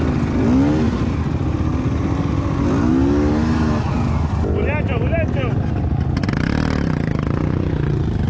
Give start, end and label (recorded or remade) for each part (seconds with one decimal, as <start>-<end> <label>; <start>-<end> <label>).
0.0-8.3 recorded

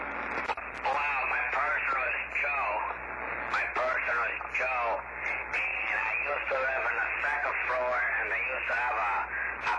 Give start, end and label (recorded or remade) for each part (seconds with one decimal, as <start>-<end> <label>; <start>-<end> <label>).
0.0-1.2 recorded; 1.2-2.1 remade; 2.1-5.7 recorded; 5.7-7.5 remade; 7.5-9.8 recorded

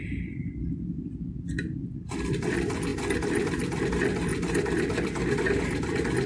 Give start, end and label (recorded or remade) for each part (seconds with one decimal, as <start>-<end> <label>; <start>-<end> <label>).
0.0-6.3 recorded

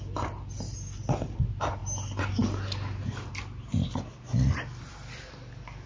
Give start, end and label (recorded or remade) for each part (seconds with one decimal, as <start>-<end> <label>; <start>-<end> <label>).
0.0-5.9 recorded